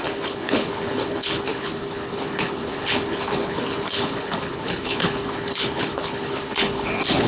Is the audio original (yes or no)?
no